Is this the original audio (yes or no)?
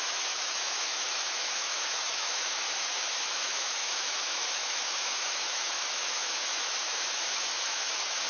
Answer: no